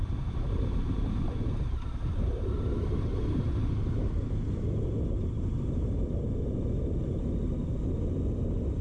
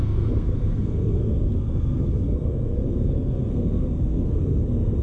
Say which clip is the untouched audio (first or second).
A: first